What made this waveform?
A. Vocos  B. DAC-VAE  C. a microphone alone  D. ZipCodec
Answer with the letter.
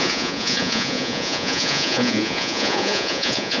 A